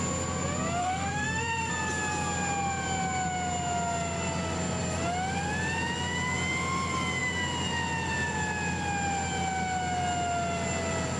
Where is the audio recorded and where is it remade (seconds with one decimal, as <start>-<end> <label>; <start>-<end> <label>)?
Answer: 0.0-0.8 recorded; 0.8-1.7 remade; 1.7-11.2 recorded